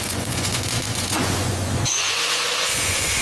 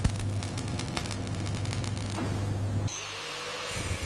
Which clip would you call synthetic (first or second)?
first